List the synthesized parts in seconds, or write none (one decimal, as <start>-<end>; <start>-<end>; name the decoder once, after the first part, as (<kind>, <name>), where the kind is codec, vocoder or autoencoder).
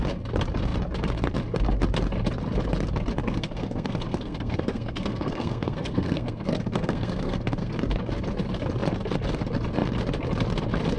3.2-7.7 (codec, SNAC)